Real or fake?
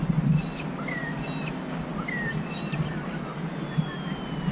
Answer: real